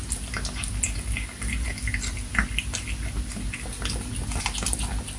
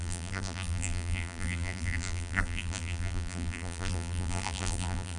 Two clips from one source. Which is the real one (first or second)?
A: first